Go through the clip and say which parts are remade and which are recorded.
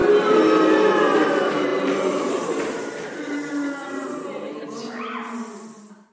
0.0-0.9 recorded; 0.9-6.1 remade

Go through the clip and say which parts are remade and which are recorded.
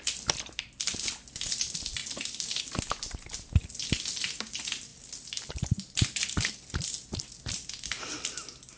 0.0-8.8 recorded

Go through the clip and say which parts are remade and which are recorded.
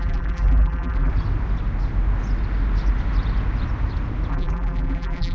0.0-1.1 remade; 1.1-4.3 recorded; 4.3-5.3 remade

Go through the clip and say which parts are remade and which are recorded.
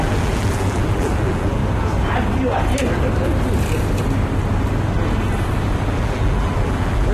0.0-1.6 remade; 1.6-5.9 recorded; 5.9-7.1 remade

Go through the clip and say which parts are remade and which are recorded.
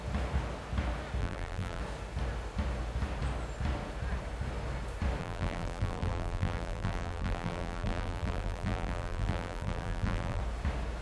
0.0-1.2 recorded; 1.2-1.8 remade; 1.8-5.2 recorded; 5.2-10.4 remade; 10.4-11.0 recorded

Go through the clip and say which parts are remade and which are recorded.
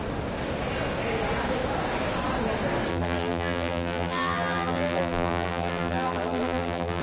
0.0-2.9 recorded; 2.9-7.0 remade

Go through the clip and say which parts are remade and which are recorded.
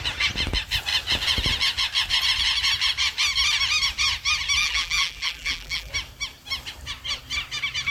0.0-4.6 recorded; 4.6-5.9 remade; 5.9-7.9 recorded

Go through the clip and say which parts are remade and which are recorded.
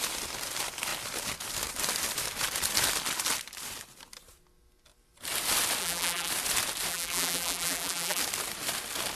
0.0-5.8 recorded; 5.8-6.3 remade; 6.3-6.9 recorded; 6.9-8.2 remade; 8.2-9.1 recorded